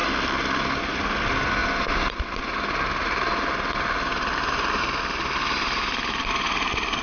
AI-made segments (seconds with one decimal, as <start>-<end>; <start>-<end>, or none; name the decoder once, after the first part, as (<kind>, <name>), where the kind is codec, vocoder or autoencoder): none